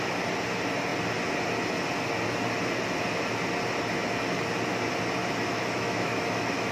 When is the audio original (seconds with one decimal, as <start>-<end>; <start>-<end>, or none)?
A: 0.0-5.2